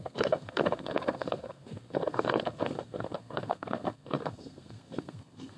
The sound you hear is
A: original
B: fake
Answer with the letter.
B